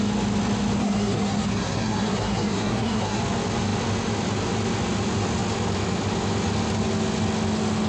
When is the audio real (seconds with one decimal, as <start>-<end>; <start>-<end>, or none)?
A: 0.0-0.8; 3.2-7.9